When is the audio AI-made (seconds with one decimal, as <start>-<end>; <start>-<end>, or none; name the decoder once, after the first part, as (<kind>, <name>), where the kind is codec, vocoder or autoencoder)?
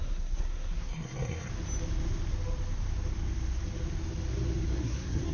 0.0-1.5 (codec, SNAC); 4.7-5.3